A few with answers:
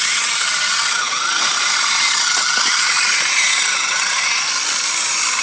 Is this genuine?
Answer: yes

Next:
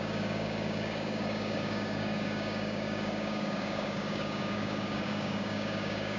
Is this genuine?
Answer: no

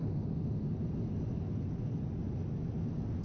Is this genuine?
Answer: yes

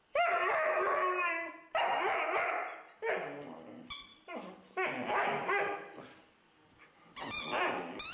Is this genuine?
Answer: yes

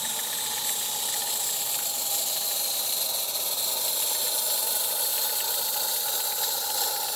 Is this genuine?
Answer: yes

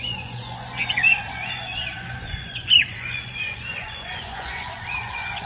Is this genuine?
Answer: no